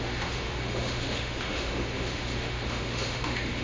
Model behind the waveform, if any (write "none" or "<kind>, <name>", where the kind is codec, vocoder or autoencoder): autoencoder, DAC-VAE